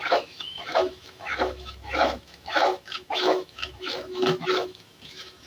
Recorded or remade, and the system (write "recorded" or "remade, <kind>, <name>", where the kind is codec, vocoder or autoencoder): remade, autoencoder, DAC-VAE